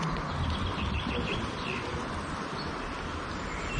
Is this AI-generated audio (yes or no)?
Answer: no